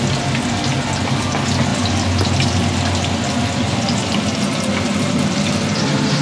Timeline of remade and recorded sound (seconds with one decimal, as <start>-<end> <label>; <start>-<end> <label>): 0.0-6.2 recorded